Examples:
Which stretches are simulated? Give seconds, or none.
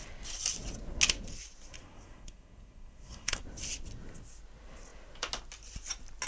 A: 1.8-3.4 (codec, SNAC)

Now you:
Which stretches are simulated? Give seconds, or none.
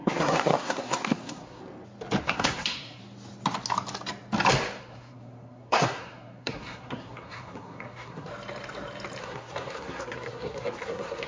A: 0.0-1.6 (codec, SNAC); 2.2-3.0; 4.8-8.3; 9.2-11.3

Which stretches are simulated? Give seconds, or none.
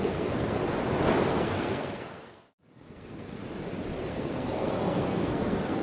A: 0.0-0.6 (codec, SNAC); 1.3-3.4; 4.0-5.8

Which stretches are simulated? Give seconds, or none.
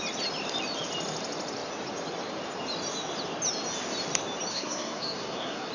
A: 4.5-5.7 (codec, SNAC)